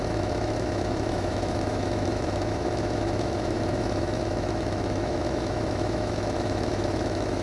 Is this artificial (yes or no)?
yes